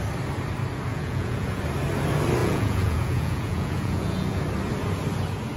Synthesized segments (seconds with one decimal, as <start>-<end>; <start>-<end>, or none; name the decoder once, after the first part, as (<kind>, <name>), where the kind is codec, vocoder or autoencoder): 0.9-1.6 (vocoder, Vocos); 2.4-4.4